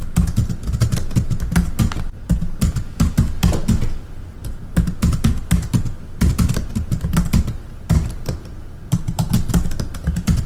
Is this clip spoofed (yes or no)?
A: no